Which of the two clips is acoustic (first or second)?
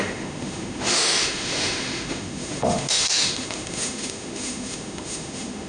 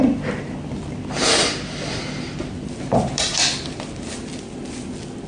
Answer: second